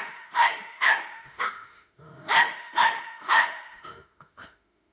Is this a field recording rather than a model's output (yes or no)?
no